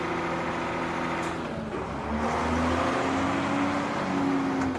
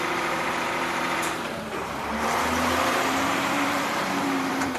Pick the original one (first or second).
first